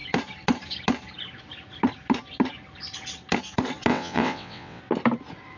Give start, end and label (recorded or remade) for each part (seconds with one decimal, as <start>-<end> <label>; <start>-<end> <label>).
0.0-3.9 recorded; 3.9-4.8 remade; 4.8-5.6 recorded